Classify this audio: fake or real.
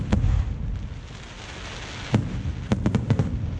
real